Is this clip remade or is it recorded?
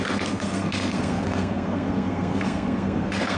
remade